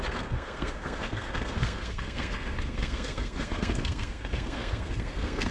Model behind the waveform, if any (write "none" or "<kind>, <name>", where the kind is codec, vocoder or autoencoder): codec, SNAC